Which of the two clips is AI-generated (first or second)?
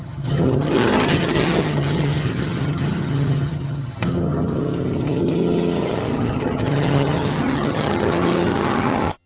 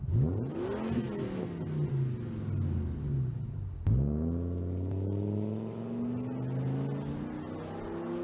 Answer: first